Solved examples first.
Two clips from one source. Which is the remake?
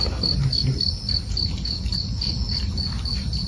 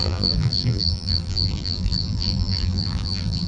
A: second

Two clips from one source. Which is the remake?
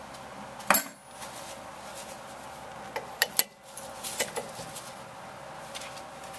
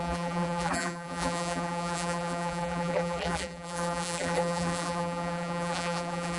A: second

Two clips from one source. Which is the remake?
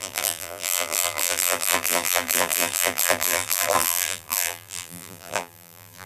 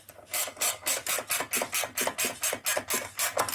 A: first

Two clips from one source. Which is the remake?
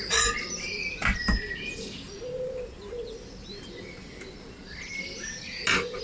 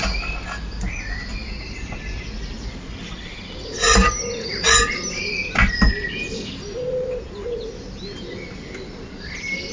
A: first